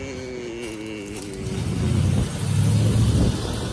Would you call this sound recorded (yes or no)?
yes